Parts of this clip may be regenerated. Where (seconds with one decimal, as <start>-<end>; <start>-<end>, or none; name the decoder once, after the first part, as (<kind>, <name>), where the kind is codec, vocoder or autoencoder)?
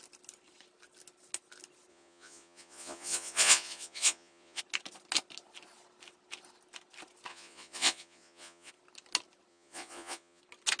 1.9-4.6 (vocoder, Vocos); 7.3-8.7; 9.5-10.4